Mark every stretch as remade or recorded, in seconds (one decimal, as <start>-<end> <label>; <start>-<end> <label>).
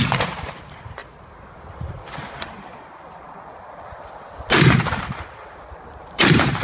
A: 0.0-1.0 remade; 1.0-5.0 recorded; 5.0-6.6 remade